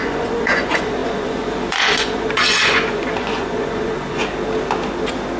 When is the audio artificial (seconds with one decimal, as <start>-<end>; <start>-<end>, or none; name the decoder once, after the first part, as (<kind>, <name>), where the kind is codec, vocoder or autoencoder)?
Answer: 0.0-4.2 (vocoder, Vocos)